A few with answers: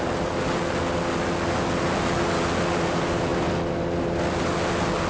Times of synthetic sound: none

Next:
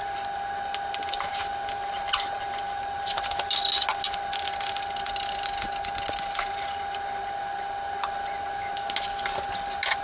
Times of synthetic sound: none

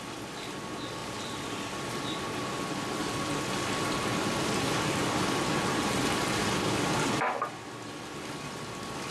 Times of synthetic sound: 1.0-2.6 (vocoder, BigVGAN v2); 3.0-7.2

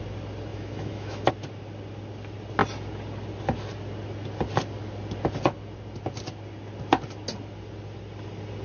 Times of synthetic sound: 0.5-1.3 (autoencoder, DAC-VAE)

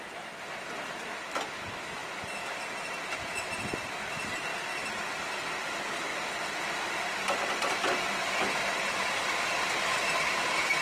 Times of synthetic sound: none

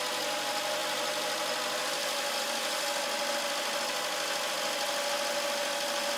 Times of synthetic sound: none

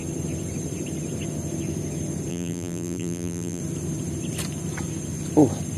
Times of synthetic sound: 2.3-3.6 (vocoder, BigVGAN v2)